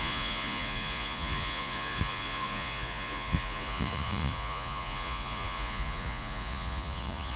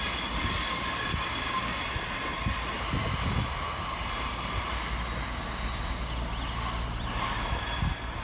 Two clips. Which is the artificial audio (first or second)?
first